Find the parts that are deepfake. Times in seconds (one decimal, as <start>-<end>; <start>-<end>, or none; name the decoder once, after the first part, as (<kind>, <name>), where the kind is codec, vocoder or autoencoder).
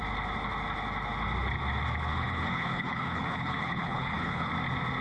2.1-4.5 (codec, HILCodec)